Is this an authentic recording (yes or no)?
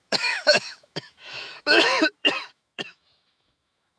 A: no